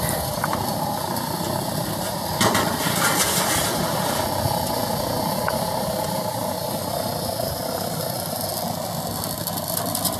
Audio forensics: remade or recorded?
remade